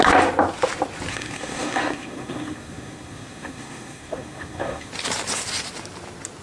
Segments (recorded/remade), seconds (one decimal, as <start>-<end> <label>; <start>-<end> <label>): 0.0-1.1 recorded; 1.1-4.9 remade; 4.9-6.4 recorded